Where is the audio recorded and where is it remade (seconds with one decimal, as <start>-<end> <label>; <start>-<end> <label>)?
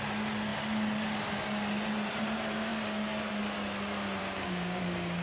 0.0-4.2 recorded; 4.2-4.8 remade; 4.8-5.2 recorded